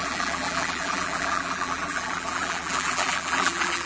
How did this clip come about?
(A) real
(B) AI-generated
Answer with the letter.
B